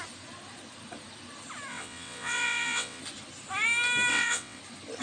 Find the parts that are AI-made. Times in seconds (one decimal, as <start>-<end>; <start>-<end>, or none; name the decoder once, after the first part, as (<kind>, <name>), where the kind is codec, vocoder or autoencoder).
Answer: 1.7-3.0 (vocoder, WaveNeXt); 4.1-4.6